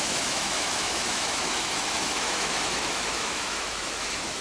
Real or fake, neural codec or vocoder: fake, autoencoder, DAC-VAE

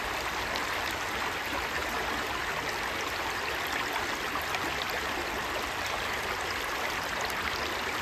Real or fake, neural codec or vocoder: real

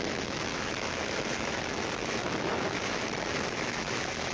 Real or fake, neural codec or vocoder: fake, autoencoder, DAC-VAE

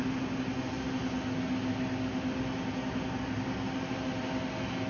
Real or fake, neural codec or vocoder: real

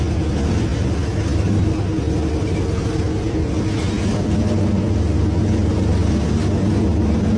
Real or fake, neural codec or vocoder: real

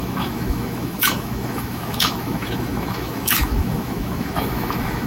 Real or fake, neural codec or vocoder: fake, autoencoder, DAC-VAE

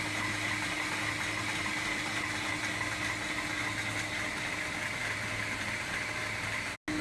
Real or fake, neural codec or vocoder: real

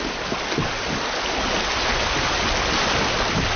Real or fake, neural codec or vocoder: real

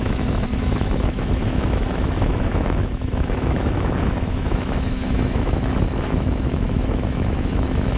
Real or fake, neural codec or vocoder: fake, autoencoder, DAC-VAE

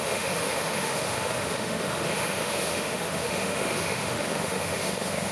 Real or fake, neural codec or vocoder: fake, autoencoder, DAC-VAE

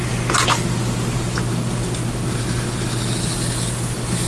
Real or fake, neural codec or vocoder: real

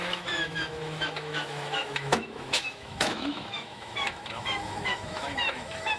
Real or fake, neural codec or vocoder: fake, autoencoder, DAC-VAE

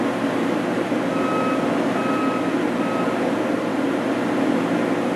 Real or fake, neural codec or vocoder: real